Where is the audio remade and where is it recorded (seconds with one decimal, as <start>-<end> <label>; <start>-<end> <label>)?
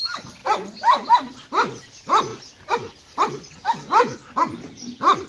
0.0-0.4 recorded; 0.4-1.1 remade; 1.1-5.3 recorded